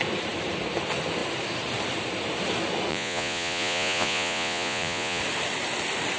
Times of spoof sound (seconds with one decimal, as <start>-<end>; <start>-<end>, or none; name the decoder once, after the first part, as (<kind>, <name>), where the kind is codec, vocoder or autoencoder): 2.9-5.2 (vocoder, Vocos)